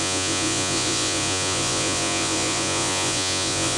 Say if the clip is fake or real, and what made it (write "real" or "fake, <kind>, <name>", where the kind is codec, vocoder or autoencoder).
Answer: fake, vocoder, Vocos